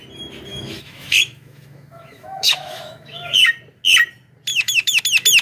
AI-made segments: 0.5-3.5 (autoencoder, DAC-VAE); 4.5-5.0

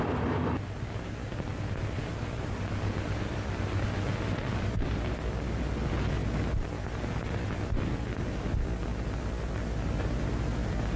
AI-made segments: none

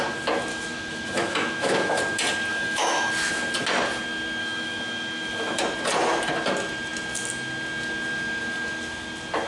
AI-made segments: 0.5-2.0 (autoencoder, DAC-VAE); 2.5-3.1; 4.4-5.6

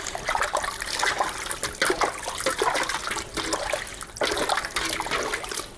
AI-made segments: none

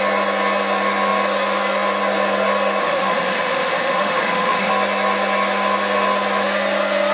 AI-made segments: 2.8-4.7 (autoencoder, DAC-VAE)